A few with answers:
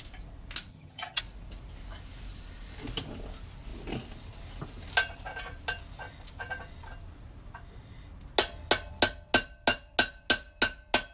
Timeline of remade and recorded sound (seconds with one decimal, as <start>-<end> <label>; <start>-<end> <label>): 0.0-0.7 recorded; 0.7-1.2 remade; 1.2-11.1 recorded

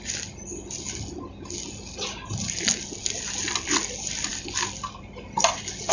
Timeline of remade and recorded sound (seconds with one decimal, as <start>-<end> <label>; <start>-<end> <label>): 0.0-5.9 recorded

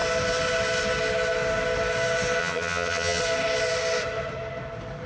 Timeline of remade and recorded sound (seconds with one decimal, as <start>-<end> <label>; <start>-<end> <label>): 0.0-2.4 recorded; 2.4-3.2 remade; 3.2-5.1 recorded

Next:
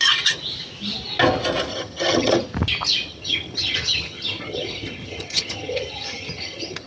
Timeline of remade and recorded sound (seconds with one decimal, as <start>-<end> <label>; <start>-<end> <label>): 0.0-1.7 recorded; 1.7-2.4 remade; 2.4-3.1 recorded; 3.1-6.9 remade

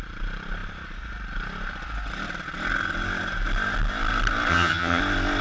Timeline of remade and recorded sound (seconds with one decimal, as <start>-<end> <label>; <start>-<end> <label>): 0.0-4.5 recorded; 4.5-5.0 remade; 5.0-5.4 recorded